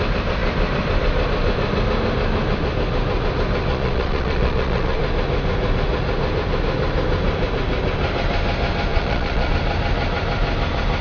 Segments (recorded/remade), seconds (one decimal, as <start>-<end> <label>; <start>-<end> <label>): 0.0-3.7 recorded; 3.7-5.0 remade; 5.0-8.9 recorded; 8.9-9.5 remade; 9.5-11.0 recorded